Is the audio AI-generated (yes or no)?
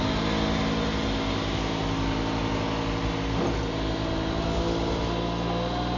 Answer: no